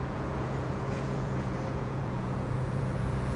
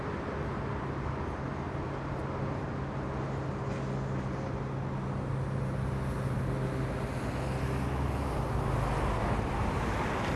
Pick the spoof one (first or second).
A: first